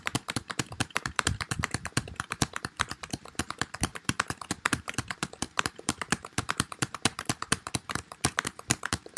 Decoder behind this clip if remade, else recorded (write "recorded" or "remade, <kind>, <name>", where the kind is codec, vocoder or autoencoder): remade, vocoder, BigVGAN v2